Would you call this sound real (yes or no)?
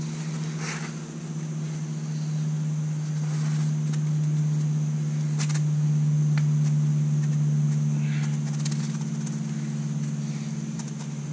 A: yes